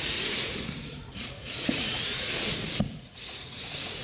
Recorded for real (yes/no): no